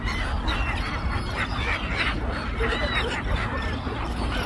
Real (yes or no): yes